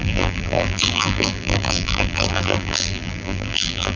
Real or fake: fake